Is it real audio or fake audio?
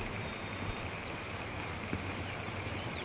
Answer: fake